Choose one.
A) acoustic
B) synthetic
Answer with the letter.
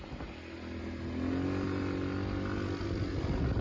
A